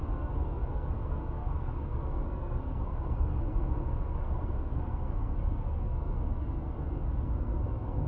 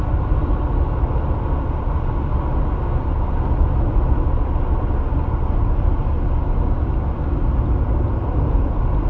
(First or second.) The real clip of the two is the second